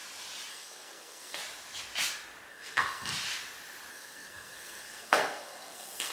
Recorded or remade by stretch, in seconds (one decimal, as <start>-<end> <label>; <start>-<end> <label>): 0.0-0.5 recorded; 0.5-1.4 remade; 1.4-2.5 recorded; 2.5-3.1 remade; 3.1-3.9 recorded; 3.9-6.1 remade